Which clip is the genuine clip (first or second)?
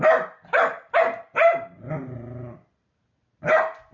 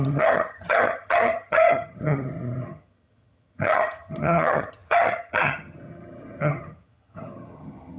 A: first